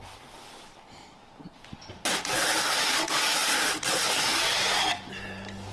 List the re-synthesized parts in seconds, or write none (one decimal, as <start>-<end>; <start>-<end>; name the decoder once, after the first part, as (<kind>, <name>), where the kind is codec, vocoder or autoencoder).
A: none